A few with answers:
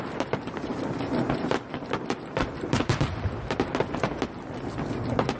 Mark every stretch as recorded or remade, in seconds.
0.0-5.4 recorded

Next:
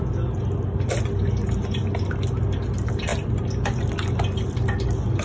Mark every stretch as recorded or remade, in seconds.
0.0-5.2 recorded

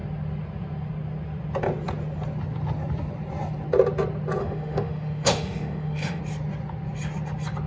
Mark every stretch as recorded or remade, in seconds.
0.0-4.4 recorded; 4.4-6.2 remade; 6.2-7.7 recorded

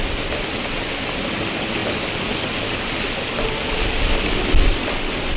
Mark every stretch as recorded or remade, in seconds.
0.0-5.4 recorded

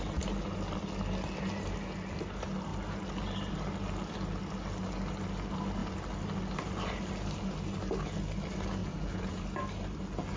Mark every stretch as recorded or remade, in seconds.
0.0-8.8 recorded; 8.8-9.4 remade; 9.4-10.4 recorded